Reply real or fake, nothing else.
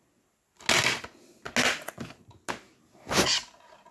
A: real